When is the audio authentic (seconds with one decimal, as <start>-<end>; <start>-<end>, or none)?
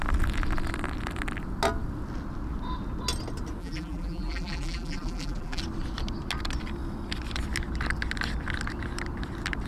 0.0-3.6; 5.6-9.7